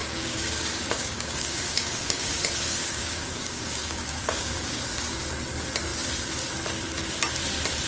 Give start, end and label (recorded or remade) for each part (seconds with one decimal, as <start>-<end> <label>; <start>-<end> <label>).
0.0-2.4 remade; 2.4-2.8 recorded; 2.8-4.8 remade; 4.8-7.9 recorded